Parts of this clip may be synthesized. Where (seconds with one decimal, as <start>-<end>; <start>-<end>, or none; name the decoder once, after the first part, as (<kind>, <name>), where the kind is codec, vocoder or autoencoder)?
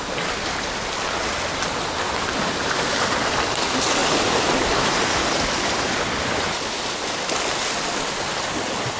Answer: none